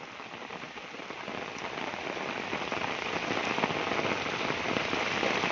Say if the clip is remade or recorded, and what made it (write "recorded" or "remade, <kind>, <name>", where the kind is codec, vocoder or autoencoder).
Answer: recorded